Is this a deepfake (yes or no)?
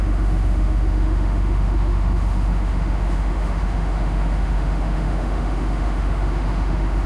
yes